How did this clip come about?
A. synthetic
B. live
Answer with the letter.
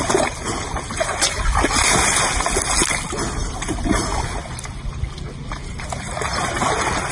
B